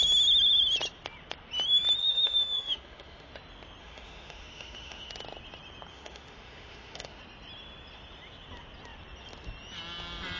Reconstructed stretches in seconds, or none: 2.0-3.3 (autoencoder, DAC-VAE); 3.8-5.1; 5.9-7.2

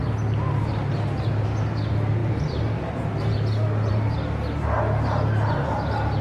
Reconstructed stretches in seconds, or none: none

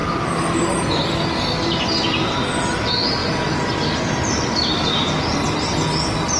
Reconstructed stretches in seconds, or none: none

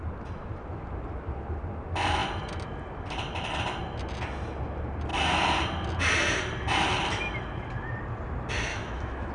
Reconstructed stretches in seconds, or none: 8.7-9.3 (autoencoder, DAC-VAE)

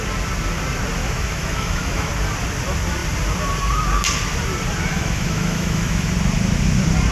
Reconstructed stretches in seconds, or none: 1.0-2.1 (autoencoder, DAC-VAE); 4.9-6.1

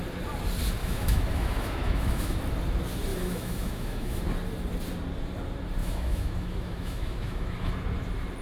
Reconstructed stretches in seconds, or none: 0.8-2.4 (autoencoder, DAC-VAE); 3.1-4.2; 5.8-7.7